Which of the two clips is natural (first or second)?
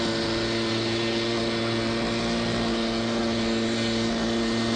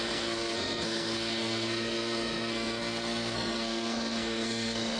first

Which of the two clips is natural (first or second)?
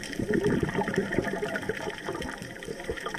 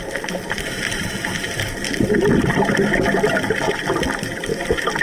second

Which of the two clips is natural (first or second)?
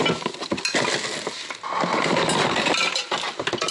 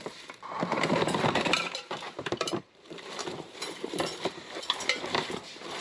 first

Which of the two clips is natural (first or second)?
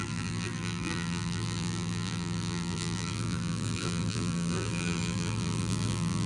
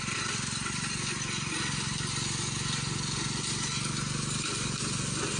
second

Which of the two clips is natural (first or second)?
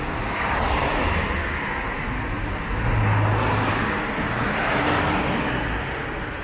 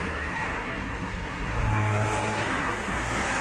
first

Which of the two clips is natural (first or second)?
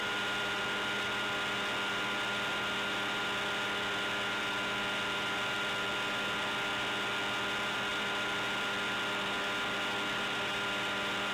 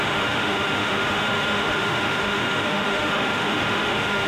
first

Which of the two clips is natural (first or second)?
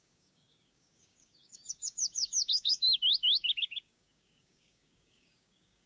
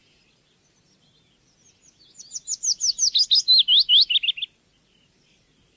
second